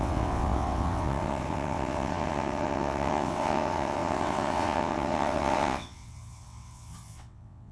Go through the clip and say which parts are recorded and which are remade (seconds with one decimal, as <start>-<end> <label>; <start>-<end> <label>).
0.0-7.7 remade